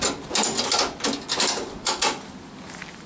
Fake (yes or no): no